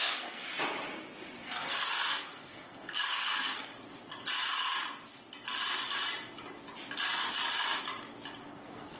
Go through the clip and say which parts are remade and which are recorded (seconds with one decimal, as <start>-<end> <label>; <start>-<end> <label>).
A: 0.0-0.4 remade; 0.4-1.4 recorded; 1.4-3.7 remade; 3.7-8.5 recorded; 8.5-9.0 remade